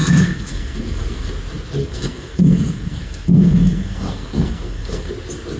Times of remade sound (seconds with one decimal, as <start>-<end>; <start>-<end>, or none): 0.0-1.3; 1.8-5.1